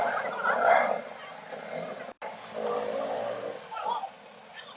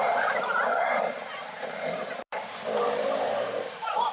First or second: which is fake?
second